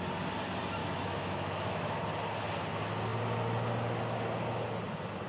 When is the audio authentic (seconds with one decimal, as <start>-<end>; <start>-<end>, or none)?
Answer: 0.0-0.8; 2.0-5.3